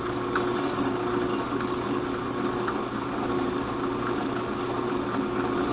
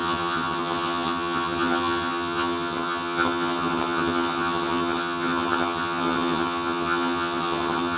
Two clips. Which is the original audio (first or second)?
first